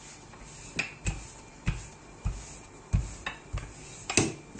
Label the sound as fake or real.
real